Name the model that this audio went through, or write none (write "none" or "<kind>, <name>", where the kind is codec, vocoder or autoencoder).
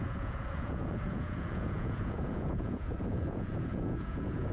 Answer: vocoder, Vocos